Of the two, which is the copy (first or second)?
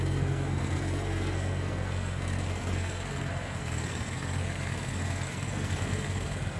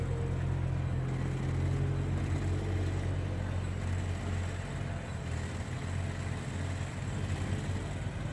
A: first